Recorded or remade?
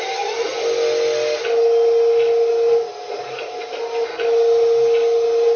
recorded